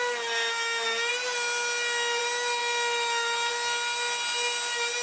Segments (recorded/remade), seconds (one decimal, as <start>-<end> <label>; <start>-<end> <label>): 0.0-5.0 recorded